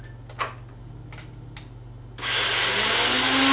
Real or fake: real